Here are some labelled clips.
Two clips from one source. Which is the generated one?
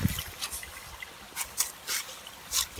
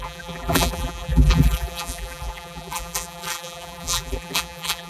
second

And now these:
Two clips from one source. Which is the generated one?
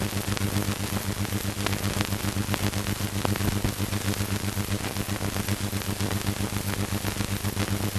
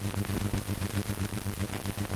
second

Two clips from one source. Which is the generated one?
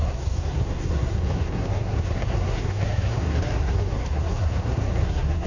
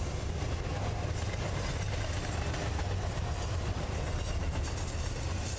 first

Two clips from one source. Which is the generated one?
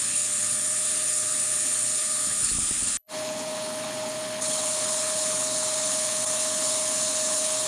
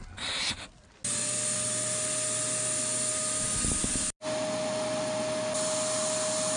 first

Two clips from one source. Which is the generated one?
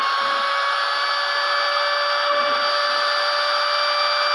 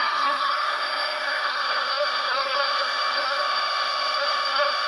second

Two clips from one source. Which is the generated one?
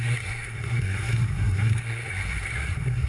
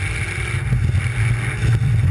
first